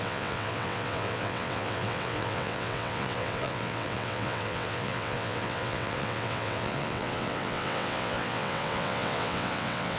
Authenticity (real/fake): fake